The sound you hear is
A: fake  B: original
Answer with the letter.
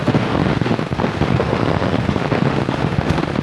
A